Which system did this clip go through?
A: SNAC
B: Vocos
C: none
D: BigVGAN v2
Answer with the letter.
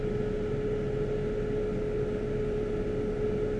C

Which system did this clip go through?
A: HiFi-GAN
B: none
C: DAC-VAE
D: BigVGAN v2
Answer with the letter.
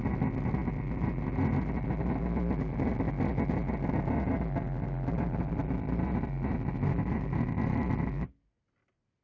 B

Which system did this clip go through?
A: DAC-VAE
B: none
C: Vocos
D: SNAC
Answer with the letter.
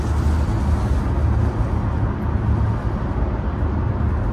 B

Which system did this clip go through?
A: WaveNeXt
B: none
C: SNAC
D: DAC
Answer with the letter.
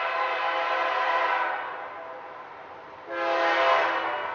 B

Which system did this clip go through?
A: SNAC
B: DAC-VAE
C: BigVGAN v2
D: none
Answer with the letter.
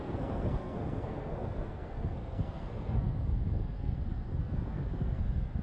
A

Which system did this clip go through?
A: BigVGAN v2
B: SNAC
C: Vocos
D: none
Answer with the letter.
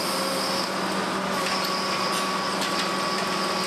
D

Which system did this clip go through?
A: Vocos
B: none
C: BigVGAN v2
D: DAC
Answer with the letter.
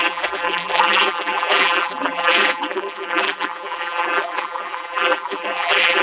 C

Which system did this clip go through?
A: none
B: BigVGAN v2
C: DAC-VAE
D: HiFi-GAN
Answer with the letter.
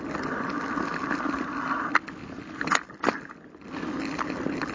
A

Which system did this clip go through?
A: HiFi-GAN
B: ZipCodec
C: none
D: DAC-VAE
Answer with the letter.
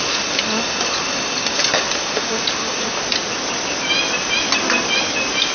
C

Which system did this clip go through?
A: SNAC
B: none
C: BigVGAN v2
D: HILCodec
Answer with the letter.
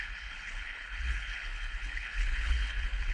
D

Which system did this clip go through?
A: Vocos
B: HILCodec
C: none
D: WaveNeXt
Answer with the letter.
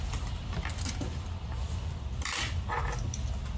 C